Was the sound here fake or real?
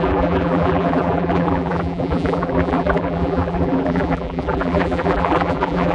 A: fake